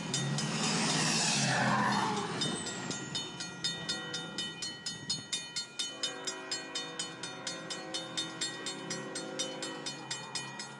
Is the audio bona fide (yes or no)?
yes